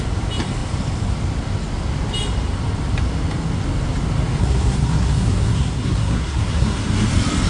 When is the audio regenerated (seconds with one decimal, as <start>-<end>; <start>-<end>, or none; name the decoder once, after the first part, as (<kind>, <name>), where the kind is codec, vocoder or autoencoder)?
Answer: 4.4-7.1 (codec, SNAC)

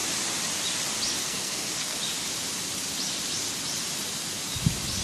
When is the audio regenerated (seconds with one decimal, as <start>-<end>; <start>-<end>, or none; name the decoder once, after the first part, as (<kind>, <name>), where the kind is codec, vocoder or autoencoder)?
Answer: 1.2-2.0 (codec, SNAC)

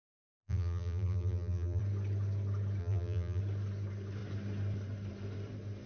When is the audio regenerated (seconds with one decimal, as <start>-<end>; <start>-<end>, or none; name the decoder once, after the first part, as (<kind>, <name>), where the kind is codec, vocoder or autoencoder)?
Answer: 0.4-1.8 (vocoder, BigVGAN v2); 2.8-3.4

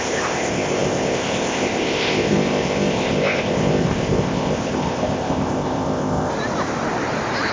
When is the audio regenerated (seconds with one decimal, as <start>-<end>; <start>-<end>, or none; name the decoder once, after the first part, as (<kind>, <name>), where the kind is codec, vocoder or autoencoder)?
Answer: 0.0-6.3 (codec, ZipCodec)

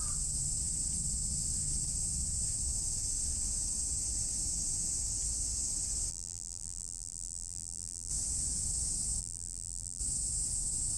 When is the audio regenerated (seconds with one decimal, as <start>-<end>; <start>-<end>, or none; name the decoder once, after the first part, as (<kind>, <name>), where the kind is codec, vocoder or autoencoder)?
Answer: 6.1-8.1 (vocoder, BigVGAN v2); 9.2-10.0